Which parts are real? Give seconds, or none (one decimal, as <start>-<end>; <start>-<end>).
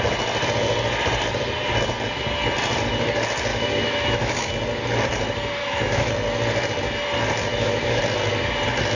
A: 0.0-3.5; 4.5-5.6; 6.1-7.5; 8.0-8.9